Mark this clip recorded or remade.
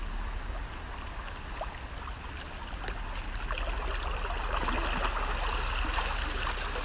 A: recorded